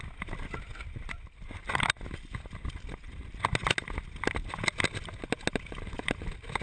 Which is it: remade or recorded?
recorded